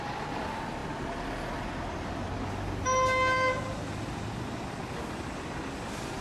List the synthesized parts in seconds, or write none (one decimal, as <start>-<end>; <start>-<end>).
none